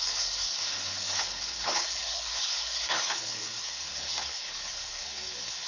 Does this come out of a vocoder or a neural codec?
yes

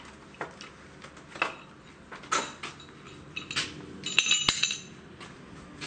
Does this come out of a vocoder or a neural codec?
no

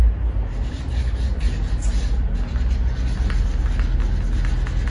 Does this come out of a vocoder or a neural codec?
no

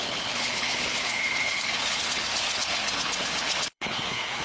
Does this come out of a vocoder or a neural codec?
yes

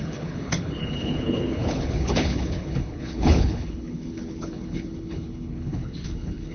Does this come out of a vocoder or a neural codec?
yes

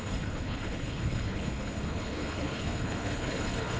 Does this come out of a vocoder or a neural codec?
yes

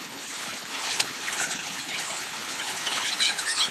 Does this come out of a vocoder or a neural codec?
yes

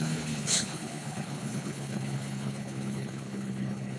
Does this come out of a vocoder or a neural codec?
yes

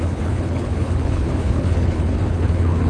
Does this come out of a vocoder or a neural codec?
yes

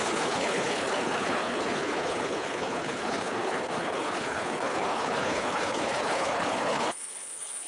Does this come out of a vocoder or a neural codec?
yes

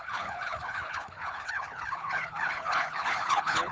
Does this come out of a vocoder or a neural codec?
yes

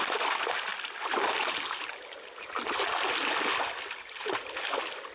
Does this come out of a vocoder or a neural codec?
no